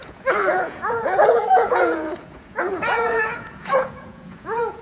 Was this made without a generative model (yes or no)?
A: no